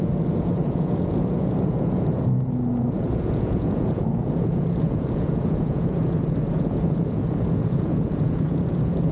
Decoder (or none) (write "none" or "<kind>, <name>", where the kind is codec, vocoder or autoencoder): vocoder, Vocos